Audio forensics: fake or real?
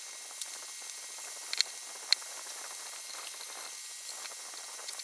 real